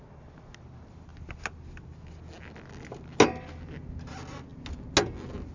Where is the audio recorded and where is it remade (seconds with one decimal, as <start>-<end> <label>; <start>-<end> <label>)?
0.0-5.5 recorded